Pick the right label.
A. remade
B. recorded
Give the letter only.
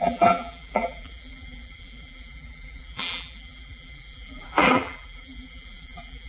A